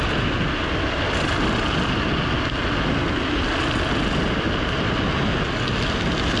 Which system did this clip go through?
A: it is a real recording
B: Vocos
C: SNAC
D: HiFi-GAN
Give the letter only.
A